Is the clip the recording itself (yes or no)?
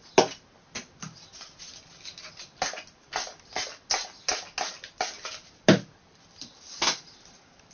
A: yes